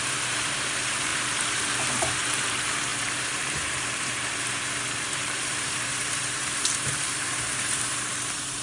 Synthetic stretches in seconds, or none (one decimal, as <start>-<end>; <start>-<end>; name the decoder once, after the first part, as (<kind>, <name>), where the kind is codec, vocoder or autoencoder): 0.0-8.6 (vocoder, BigVGAN v2)